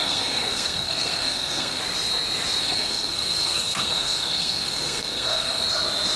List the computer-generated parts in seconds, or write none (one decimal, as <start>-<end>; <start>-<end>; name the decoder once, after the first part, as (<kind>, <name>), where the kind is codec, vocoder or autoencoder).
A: 0.0-1.8 (codec, SNAC); 2.6-5.6